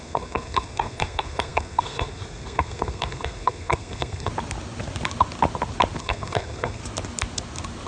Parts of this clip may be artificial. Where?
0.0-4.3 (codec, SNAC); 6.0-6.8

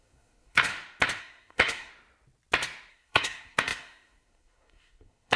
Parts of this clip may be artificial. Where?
0.0-0.7 (codec, SNAC); 1.2-1.9; 2.9-5.4